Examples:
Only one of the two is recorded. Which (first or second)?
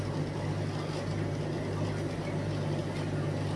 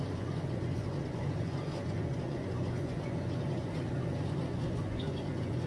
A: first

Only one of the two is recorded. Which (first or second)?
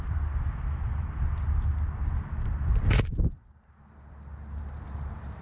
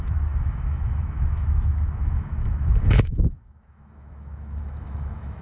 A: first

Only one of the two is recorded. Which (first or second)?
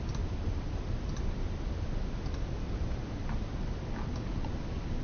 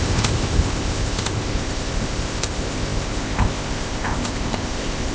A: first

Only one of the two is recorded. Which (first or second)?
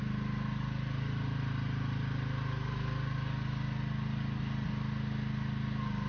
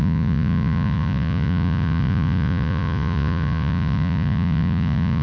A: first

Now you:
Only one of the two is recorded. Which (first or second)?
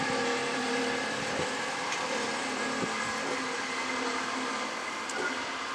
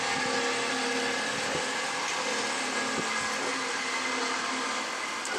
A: second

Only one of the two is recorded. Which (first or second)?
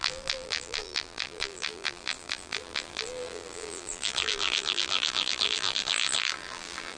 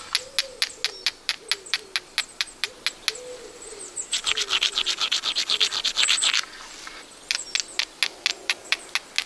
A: second